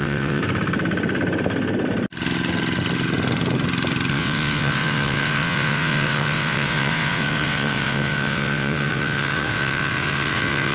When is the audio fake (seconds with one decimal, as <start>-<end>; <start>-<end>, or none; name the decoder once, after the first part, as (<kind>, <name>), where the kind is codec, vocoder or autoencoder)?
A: 0.0-0.4 (vocoder, WaveNeXt); 4.1-10.7